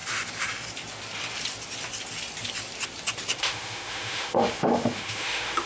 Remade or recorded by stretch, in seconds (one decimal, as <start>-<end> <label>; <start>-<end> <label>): 0.0-3.4 recorded; 3.4-5.7 remade